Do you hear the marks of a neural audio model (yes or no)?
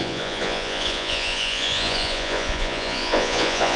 yes